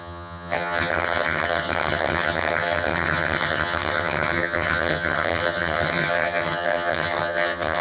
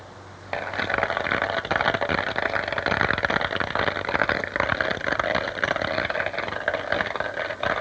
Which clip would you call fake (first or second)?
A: first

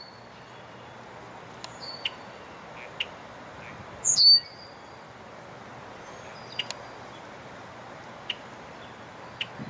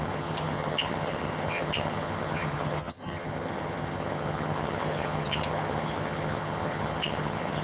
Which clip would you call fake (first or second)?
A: second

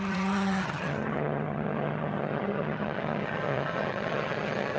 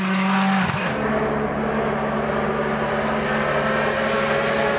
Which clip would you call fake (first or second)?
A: first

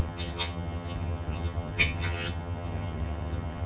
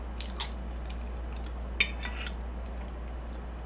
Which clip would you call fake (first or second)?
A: first